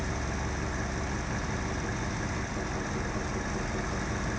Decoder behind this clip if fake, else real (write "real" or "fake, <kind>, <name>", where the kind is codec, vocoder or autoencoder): real